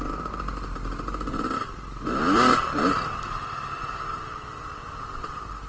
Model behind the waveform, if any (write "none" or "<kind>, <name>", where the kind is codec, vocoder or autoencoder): vocoder, BigVGAN v2